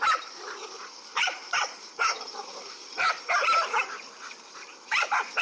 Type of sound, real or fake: fake